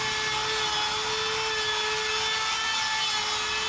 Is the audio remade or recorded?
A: recorded